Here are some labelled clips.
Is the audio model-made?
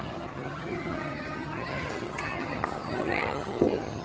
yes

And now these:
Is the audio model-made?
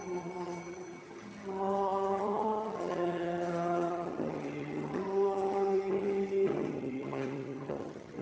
yes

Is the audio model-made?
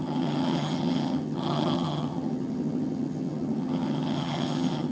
yes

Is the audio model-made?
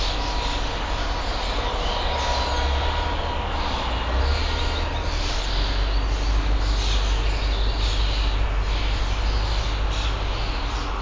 no